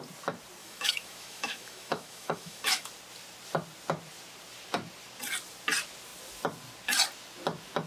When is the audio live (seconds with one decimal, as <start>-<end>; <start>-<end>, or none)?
0.0-0.6; 2.9-7.9